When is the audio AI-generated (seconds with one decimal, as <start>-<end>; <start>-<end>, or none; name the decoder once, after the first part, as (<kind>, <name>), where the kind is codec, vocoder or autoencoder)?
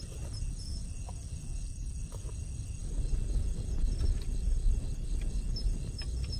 none